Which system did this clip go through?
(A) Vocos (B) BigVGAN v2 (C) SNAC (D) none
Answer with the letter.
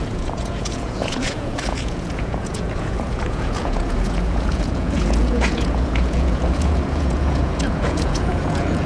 A